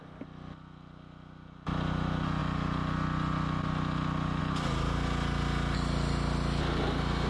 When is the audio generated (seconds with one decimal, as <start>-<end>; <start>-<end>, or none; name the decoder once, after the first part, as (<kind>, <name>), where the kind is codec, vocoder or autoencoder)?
none